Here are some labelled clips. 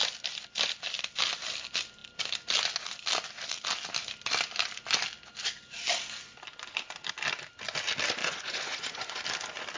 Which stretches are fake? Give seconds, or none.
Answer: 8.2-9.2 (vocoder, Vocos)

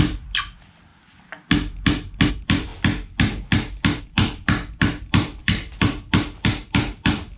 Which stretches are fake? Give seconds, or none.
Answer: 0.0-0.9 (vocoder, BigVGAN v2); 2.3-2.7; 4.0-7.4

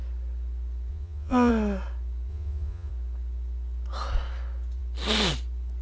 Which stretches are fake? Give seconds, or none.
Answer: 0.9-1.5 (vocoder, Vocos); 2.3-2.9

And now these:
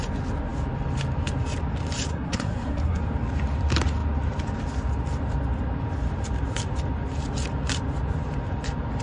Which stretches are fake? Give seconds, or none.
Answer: 2.1-3.0 (codec, SNAC)